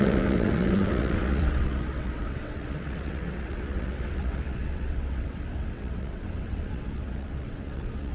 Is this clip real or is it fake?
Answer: fake